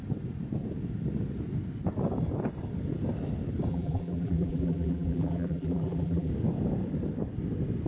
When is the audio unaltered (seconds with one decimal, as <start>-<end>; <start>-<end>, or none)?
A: 0.0-3.7; 6.3-7.9